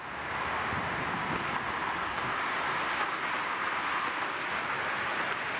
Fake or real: real